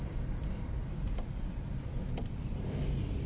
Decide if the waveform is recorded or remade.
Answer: remade